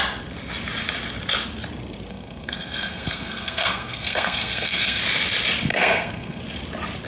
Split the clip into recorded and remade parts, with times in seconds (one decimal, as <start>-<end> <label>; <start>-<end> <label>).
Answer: 0.0-2.1 recorded; 2.1-5.0 remade; 5.0-5.7 recorded; 5.7-6.4 remade; 6.4-7.1 recorded